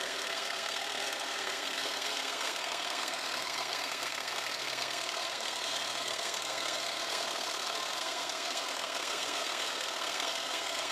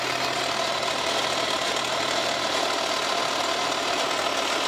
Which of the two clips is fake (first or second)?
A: first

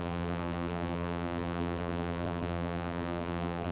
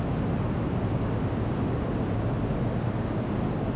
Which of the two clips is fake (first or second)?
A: first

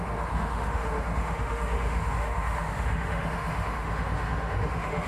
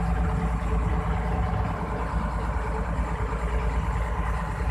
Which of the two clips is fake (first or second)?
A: first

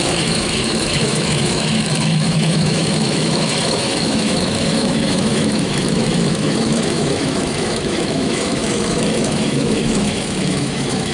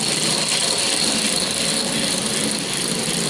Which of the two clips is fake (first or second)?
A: first